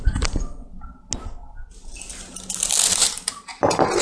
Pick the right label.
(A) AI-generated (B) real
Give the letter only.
B